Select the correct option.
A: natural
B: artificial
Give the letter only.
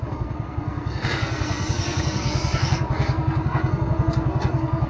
B